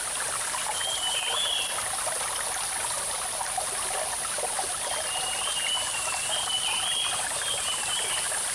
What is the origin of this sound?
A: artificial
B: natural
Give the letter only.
B